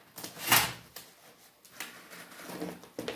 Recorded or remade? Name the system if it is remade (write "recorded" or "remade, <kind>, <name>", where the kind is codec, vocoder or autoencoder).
recorded